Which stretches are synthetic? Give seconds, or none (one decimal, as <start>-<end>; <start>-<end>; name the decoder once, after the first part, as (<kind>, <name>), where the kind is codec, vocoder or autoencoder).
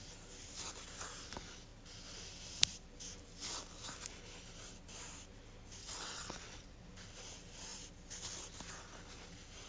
5.8-6.9 (vocoder, WaveNeXt)